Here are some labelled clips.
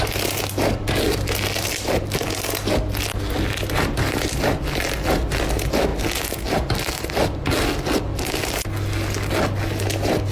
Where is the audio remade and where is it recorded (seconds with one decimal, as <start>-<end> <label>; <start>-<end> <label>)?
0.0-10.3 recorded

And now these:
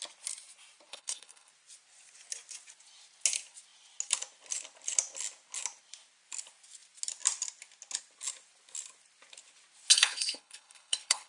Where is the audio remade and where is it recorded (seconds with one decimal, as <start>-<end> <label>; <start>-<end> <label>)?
0.0-0.9 recorded; 0.9-1.5 remade; 1.5-9.9 recorded; 9.9-11.3 remade

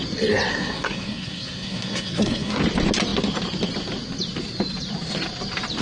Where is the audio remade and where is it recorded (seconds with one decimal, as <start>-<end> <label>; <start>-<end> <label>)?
0.0-0.5 recorded; 0.5-2.6 remade; 2.6-5.8 recorded

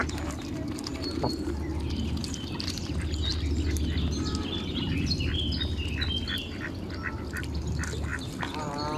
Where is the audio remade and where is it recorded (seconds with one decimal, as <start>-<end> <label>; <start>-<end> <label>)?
0.0-9.0 recorded